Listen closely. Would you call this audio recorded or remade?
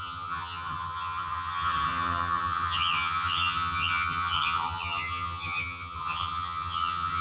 remade